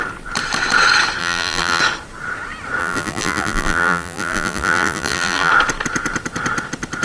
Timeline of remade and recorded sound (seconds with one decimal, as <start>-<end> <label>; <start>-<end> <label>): 0.0-1.2 recorded; 1.2-1.8 remade; 1.8-2.8 recorded; 2.8-5.5 remade; 5.5-7.0 recorded